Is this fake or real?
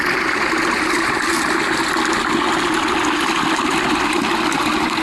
real